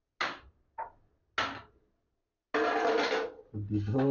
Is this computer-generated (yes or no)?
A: no